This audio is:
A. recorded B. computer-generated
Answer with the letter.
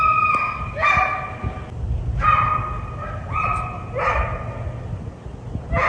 A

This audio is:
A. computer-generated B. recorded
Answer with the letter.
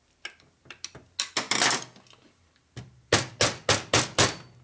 B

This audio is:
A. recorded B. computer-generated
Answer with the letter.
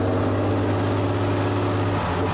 A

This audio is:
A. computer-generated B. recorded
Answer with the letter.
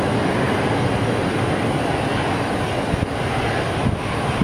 B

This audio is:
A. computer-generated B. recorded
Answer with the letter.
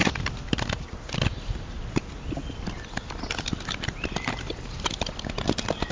A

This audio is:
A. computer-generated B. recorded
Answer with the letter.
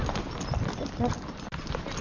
B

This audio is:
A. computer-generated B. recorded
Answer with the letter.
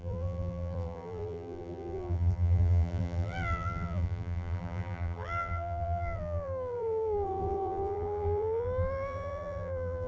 A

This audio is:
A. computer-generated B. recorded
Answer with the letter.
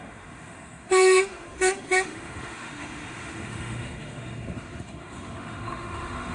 A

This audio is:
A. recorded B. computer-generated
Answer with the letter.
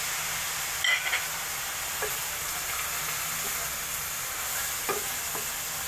A